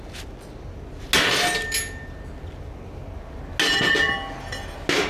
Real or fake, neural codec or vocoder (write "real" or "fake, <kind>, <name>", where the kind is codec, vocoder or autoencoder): real